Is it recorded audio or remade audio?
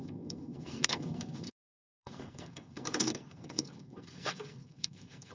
remade